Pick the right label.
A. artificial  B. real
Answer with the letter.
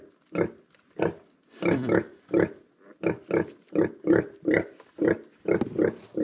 B